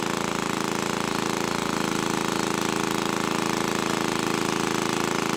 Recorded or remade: recorded